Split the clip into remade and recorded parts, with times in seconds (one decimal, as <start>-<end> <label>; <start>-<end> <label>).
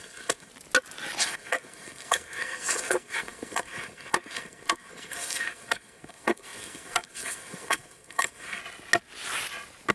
0.0-0.5 remade; 0.5-1.2 recorded; 1.2-8.6 remade; 8.6-9.9 recorded